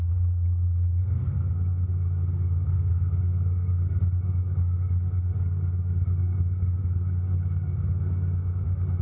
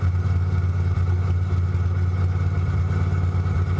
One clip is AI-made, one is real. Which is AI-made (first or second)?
first